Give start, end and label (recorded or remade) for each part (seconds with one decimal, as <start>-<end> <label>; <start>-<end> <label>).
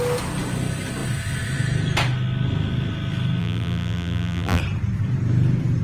0.0-3.4 recorded; 3.4-4.6 remade; 4.6-5.8 recorded